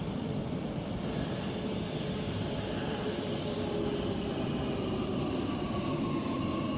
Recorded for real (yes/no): yes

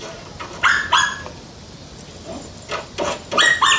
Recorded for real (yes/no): yes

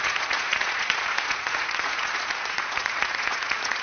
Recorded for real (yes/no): no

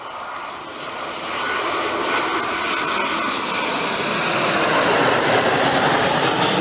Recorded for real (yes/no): yes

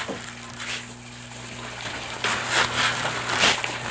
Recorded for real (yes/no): yes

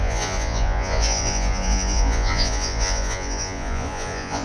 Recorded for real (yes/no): no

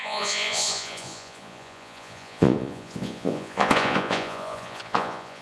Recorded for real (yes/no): no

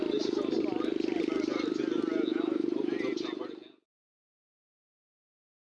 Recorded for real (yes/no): yes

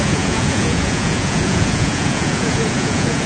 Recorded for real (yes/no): no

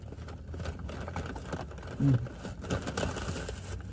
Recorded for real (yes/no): yes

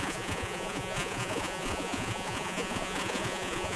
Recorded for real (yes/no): no